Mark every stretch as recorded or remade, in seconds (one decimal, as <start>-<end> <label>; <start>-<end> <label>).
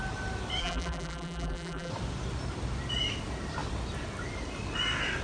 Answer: 0.0-0.6 recorded; 0.6-1.9 remade; 1.9-5.2 recorded